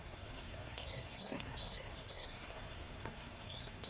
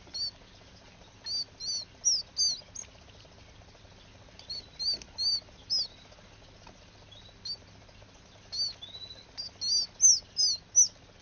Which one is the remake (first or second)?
first